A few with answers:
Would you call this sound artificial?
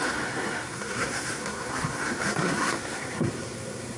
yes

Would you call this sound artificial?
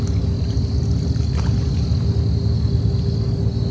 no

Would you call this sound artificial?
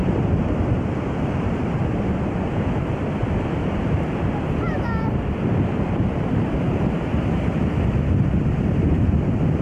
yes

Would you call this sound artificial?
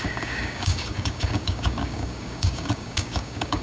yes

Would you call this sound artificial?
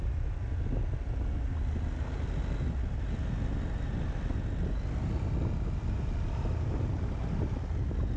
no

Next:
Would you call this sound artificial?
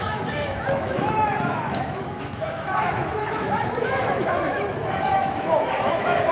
yes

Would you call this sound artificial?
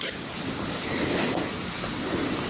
no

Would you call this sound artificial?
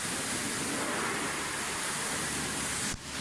no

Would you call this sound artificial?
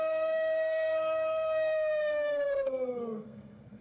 yes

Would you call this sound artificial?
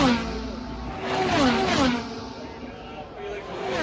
no